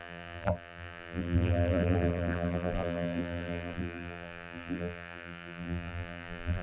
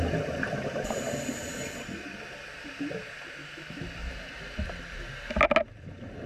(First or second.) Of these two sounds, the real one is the second